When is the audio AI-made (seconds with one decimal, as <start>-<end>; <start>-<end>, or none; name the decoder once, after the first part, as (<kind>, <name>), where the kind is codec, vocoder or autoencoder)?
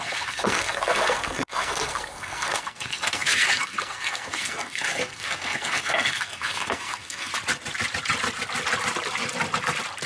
0.0-7.3 (codec, SNAC)